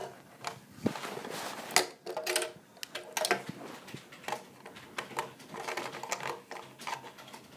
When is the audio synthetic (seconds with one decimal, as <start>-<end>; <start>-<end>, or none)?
none